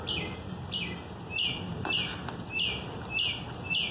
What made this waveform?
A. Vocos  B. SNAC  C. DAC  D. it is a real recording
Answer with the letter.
D